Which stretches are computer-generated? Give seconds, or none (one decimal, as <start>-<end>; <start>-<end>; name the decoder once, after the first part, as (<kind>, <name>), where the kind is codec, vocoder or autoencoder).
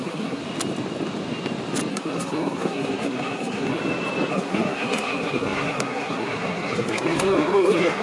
0.0-0.4 (codec, SNAC); 1.9-3.8; 4.3-8.0